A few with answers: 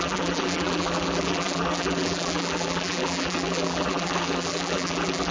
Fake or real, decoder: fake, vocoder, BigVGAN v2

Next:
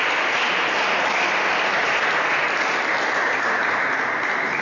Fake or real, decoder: real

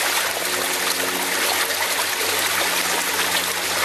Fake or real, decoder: real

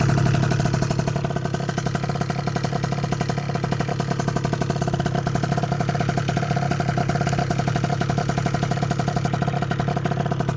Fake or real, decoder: real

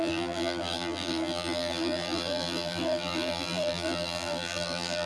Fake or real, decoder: fake, vocoder, BigVGAN v2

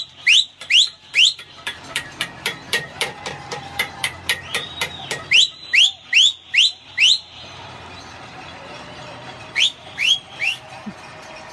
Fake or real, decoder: fake, vocoder, BigVGAN v2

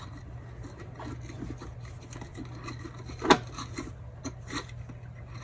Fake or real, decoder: real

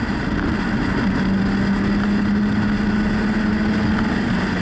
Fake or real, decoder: real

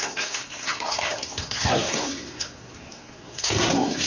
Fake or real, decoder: fake, codec, SNAC